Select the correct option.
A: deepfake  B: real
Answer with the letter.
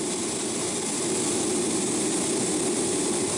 B